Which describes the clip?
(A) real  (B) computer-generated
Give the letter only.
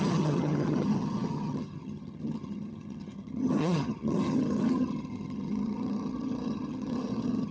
B